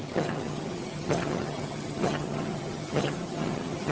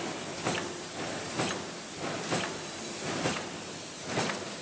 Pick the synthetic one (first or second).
first